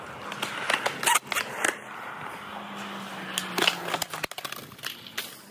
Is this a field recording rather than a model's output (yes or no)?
yes